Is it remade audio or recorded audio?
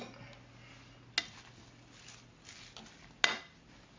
recorded